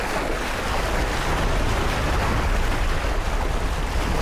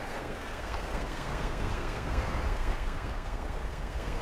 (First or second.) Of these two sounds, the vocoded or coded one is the second